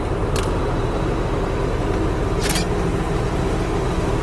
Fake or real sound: real